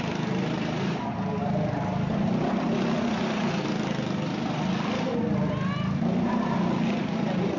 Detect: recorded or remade recorded